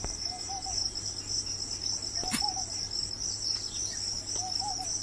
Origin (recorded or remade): recorded